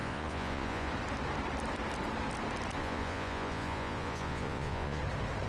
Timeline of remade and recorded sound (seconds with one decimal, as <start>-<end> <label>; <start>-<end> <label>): 0.0-0.9 remade; 0.9-2.8 recorded; 2.8-5.0 remade; 5.0-5.5 recorded